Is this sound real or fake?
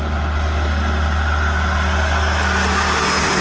real